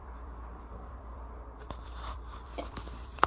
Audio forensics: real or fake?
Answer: fake